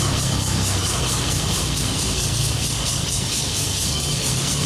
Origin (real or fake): fake